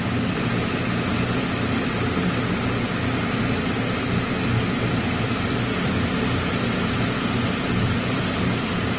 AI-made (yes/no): no